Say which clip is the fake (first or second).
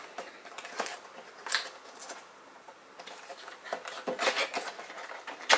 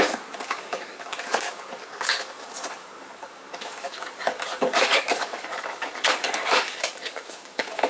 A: second